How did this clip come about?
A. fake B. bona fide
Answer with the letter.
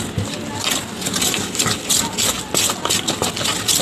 B